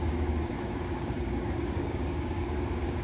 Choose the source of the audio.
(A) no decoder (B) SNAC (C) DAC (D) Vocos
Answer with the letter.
C